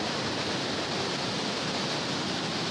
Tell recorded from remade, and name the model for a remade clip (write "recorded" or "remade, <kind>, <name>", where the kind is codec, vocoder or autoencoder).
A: recorded